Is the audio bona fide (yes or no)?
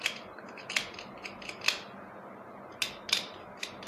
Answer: yes